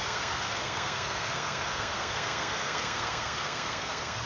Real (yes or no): no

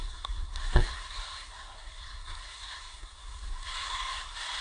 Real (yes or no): no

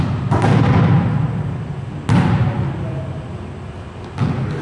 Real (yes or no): yes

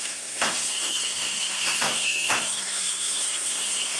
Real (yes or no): no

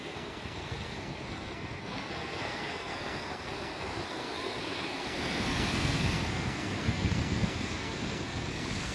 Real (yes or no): no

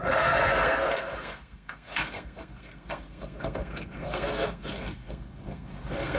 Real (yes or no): no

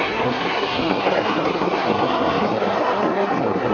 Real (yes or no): no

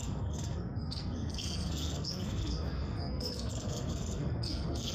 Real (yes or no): no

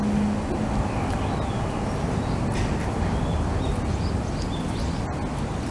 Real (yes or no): yes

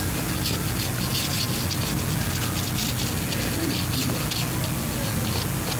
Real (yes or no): yes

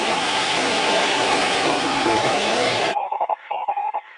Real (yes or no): no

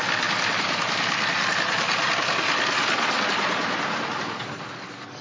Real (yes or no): yes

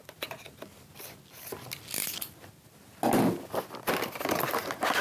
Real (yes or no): yes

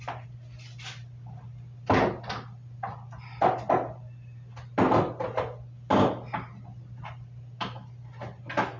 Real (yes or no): yes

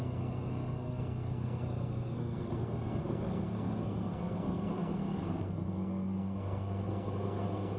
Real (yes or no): no